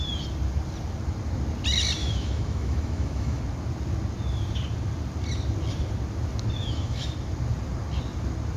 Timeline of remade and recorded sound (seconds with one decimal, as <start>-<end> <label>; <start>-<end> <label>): 0.0-2.0 recorded; 2.0-3.4 remade; 3.4-6.6 recorded; 6.6-7.1 remade; 7.1-8.6 recorded